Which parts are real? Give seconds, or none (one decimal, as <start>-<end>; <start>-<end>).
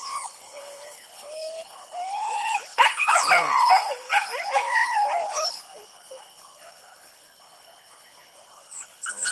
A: none